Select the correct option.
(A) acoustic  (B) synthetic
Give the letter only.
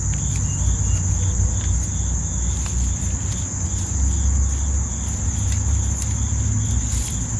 A